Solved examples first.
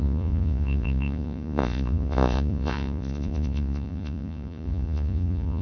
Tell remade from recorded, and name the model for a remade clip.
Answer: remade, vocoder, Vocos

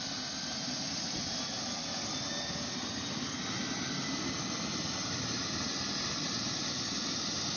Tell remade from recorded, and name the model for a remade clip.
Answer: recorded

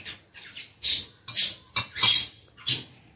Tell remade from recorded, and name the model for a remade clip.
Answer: recorded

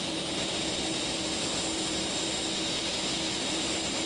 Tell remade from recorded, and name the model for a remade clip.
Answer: recorded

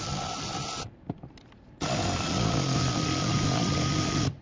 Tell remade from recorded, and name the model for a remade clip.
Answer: recorded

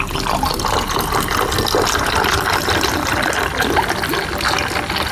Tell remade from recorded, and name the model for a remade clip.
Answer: recorded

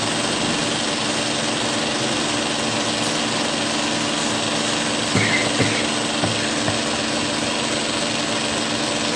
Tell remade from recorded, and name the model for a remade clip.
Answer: recorded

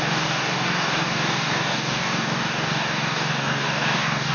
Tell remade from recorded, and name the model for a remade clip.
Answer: remade, codec, DAC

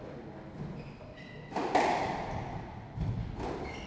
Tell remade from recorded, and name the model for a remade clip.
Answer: recorded